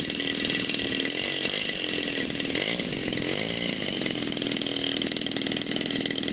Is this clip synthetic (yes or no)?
no